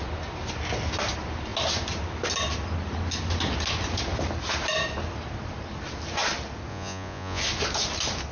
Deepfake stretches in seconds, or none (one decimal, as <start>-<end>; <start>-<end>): 6.7-7.4